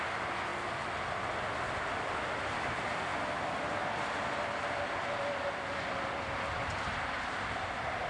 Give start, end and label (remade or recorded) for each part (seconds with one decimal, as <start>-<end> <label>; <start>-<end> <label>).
0.0-8.1 recorded